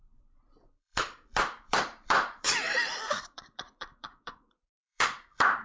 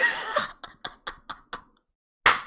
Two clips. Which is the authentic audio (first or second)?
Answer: second